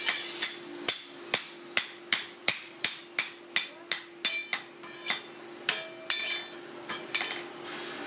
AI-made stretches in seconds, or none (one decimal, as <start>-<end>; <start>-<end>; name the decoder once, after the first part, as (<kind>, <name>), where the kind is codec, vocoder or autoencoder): 2.4-3.0 (vocoder, BigVGAN v2)